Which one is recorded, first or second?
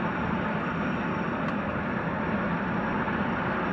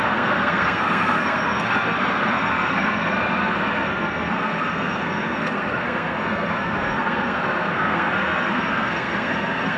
first